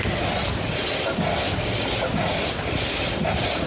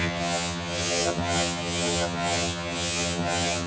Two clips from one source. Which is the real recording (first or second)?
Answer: first